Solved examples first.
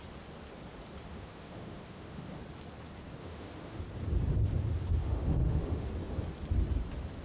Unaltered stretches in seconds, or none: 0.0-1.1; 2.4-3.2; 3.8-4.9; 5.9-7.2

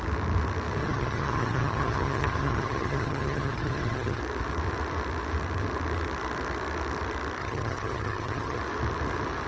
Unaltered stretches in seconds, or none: 0.0-0.8; 4.2-7.4; 8.6-9.5

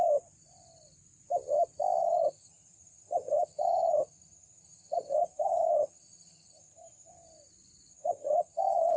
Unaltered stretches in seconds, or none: 0.0-2.0; 7.1-7.9

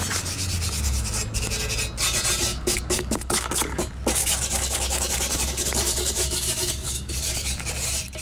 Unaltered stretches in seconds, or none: 0.0-2.5; 3.8-4.2; 7.7-8.2

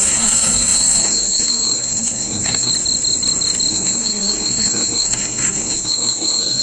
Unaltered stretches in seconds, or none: 2.7-3.7